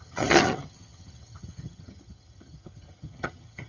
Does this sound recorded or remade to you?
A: remade